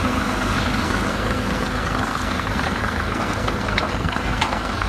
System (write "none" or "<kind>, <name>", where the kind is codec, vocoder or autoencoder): codec, SNAC